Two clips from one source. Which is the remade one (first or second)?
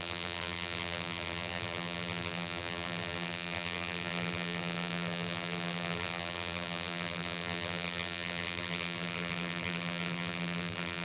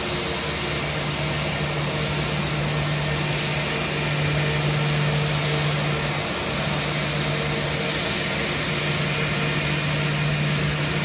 first